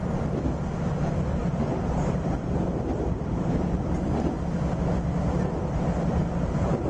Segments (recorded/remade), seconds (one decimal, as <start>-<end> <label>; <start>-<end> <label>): 0.0-1.4 recorded; 1.4-3.9 remade; 3.9-6.2 recorded; 6.2-6.9 remade